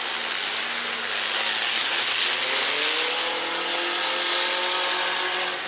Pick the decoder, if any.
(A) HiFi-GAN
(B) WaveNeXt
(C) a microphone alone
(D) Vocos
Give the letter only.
C